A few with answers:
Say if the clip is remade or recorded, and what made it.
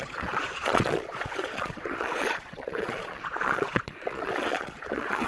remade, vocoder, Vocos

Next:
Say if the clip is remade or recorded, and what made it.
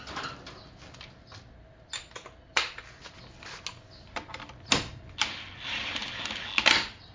recorded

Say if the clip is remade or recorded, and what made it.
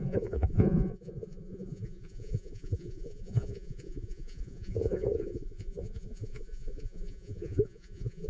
remade, vocoder, Vocos